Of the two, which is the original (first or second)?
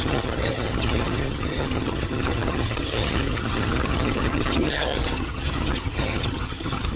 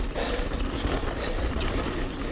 second